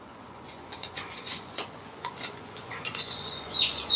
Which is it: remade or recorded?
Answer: remade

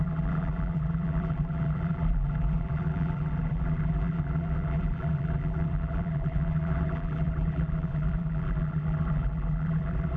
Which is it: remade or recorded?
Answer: remade